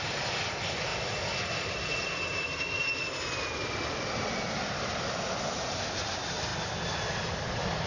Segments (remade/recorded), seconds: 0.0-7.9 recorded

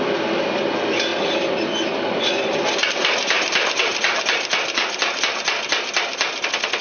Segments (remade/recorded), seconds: 0.0-6.8 recorded

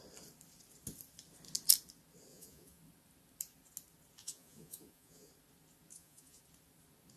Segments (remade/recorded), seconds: 0.0-2.3 recorded; 2.3-2.8 remade; 2.8-4.2 recorded; 4.2-5.3 remade; 5.3-5.9 recorded; 5.9-6.4 remade; 6.4-7.2 recorded